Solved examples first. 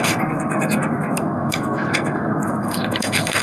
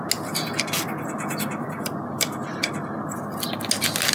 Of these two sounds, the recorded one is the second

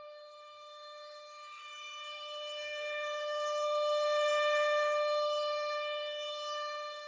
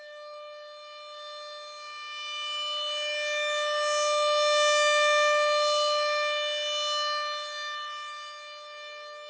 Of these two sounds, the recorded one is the second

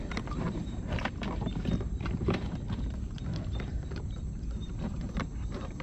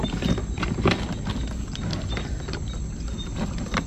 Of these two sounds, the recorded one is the second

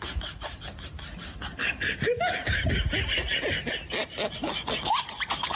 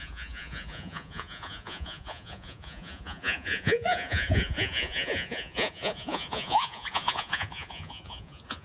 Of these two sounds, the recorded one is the first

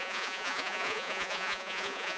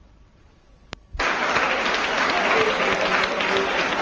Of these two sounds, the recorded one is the second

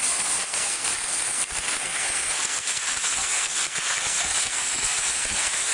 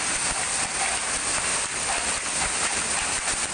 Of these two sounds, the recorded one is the second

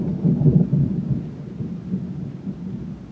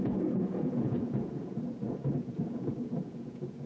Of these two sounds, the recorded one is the first